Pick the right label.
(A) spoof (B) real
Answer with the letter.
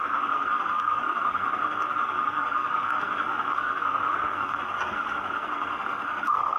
A